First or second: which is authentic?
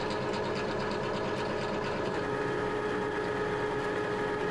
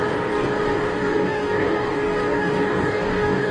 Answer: first